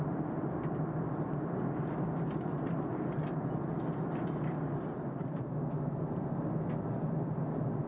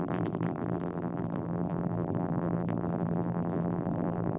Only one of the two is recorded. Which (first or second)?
first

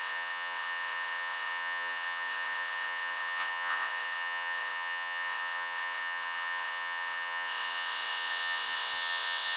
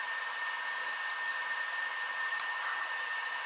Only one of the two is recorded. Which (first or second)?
second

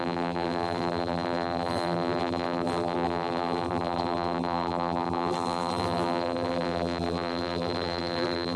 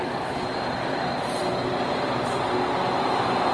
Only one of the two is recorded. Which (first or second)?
second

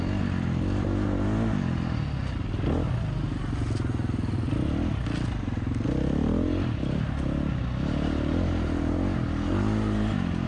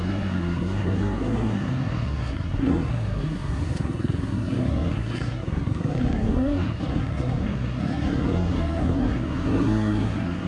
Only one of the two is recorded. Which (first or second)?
first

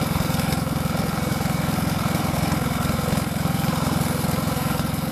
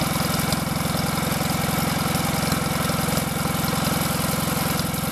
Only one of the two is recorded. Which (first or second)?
second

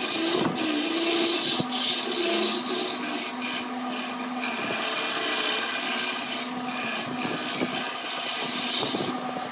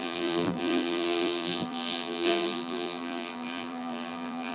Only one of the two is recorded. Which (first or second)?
first